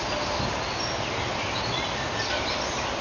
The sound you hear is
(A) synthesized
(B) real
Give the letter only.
B